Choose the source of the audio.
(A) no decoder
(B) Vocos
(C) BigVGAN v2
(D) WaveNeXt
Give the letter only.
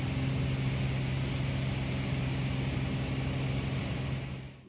A